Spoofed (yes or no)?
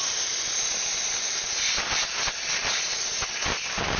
no